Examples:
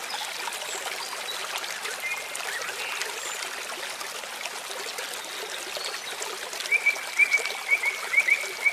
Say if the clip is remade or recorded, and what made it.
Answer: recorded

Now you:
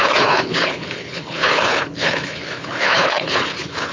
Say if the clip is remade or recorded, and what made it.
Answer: remade, codec, HILCodec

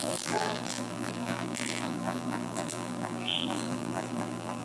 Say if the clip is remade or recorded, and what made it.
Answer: remade, vocoder, BigVGAN v2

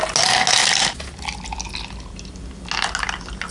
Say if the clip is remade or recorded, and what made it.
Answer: recorded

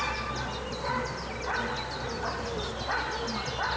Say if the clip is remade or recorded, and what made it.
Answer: recorded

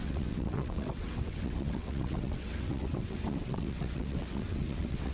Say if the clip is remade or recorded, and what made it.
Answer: remade, vocoder, WaveNeXt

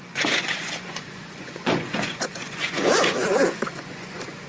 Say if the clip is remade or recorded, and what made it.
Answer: remade, vocoder, Vocos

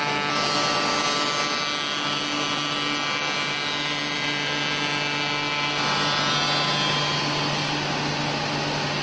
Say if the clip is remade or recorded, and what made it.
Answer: recorded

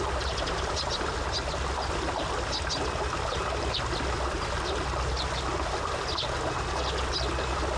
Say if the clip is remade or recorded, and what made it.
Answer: recorded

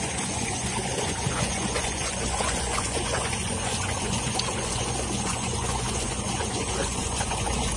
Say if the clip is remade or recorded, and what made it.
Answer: remade, vocoder, Vocos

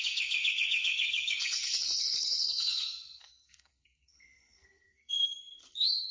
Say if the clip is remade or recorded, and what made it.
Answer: remade, codec, SNAC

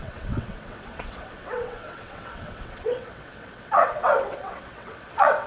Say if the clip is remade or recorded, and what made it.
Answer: remade, vocoder, WaveNeXt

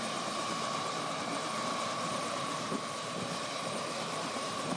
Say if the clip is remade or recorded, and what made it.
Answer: remade, vocoder, BigVGAN v2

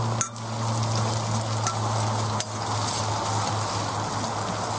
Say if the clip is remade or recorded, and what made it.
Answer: recorded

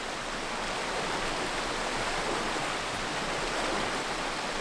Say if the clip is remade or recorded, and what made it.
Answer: recorded